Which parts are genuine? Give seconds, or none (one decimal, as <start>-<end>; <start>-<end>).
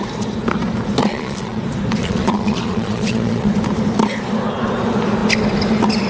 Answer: 0.0-1.0; 1.6-2.0; 3.5-6.1